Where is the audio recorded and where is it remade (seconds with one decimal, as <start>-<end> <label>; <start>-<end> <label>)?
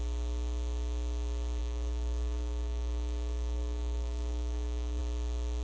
0.0-1.6 recorded; 1.6-5.0 remade; 5.0-5.6 recorded